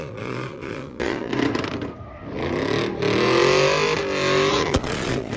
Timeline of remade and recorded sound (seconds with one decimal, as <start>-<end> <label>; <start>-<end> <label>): 0.0-1.3 remade; 1.3-4.5 recorded; 4.5-5.4 remade